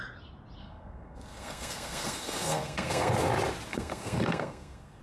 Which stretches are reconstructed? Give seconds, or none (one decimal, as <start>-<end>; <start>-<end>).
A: 0.6-3.1; 3.7-5.0